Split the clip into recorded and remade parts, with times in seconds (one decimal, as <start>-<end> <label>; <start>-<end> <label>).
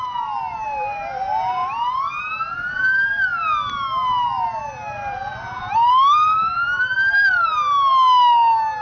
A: 0.0-8.8 recorded